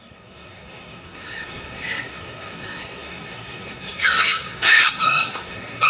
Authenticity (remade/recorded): remade